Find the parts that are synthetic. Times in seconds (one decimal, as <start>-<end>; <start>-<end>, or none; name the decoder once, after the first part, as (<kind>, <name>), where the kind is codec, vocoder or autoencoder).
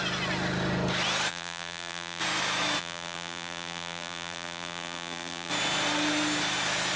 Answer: 1.3-2.2 (vocoder, BigVGAN v2); 2.8-5.5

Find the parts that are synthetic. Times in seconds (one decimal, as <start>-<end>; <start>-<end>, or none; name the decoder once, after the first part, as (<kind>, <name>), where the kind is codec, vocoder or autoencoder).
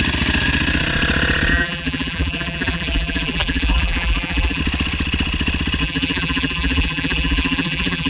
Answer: 1.5-4.6 (vocoder, BigVGAN v2); 5.8-8.1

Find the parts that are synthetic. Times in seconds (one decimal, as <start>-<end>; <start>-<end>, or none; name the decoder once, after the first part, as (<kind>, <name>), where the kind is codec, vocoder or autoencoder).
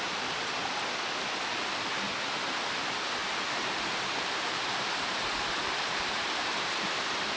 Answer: 3.2-6.9 (vocoder, BigVGAN v2)